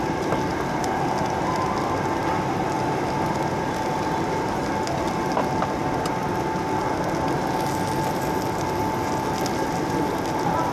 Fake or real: real